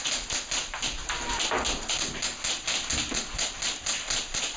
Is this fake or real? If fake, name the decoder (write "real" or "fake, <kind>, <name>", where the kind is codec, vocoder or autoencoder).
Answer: real